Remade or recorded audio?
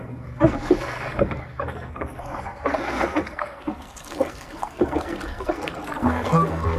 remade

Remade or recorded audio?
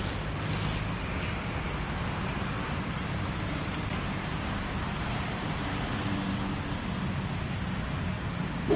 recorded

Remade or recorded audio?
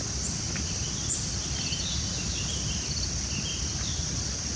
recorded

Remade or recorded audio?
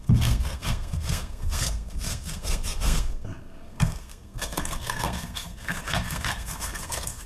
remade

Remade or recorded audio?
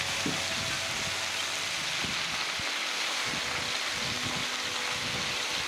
recorded